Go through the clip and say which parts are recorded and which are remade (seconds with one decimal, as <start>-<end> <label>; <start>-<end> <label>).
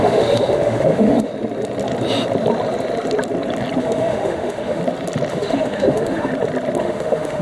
0.0-1.3 remade; 1.3-3.8 recorded; 3.8-4.8 remade; 4.8-5.3 recorded; 5.3-6.3 remade; 6.3-6.8 recorded; 6.8-7.4 remade